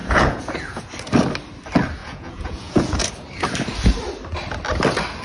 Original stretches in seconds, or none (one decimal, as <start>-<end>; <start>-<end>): 0.8-2.0; 3.1-5.2